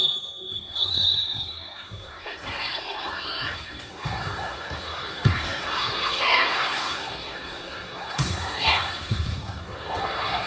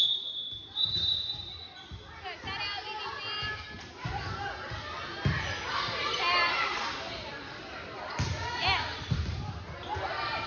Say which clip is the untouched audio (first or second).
second